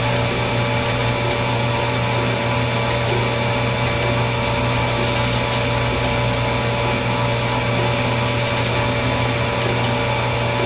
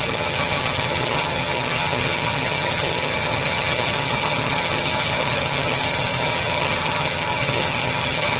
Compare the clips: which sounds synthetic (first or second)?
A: second